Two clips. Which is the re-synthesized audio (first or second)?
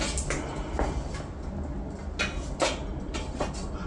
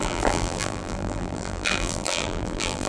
second